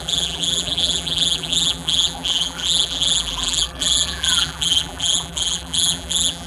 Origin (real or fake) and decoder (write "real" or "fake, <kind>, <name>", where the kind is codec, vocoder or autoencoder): fake, vocoder, BigVGAN v2